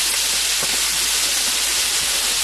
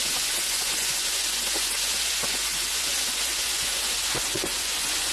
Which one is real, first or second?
first